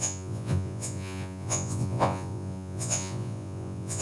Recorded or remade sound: remade